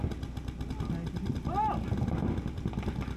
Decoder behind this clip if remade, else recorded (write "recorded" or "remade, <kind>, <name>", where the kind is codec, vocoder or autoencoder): recorded